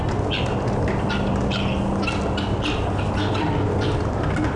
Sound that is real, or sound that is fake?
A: real